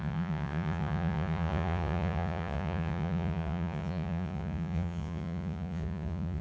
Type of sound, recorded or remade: remade